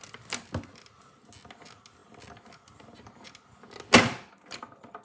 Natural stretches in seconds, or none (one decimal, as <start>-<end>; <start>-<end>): 0.0-5.0